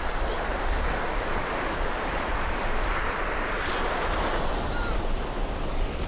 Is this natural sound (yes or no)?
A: yes